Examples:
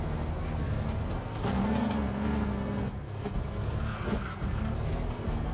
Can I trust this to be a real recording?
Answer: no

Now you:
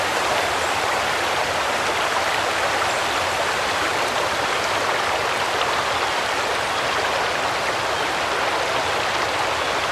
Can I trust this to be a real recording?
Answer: yes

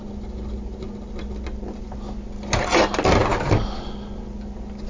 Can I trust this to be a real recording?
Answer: yes